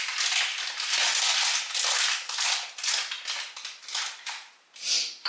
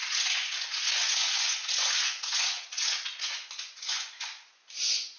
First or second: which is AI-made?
second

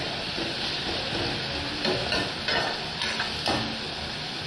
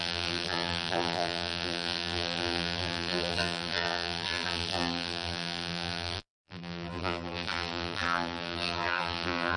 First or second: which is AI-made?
second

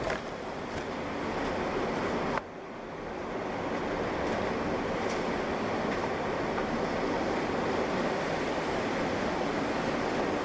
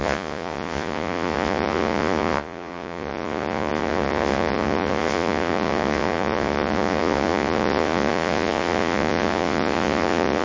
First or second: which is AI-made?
second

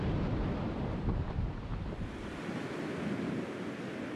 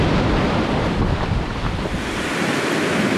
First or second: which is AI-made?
second